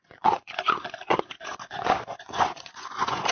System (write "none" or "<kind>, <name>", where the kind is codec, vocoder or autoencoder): vocoder, Vocos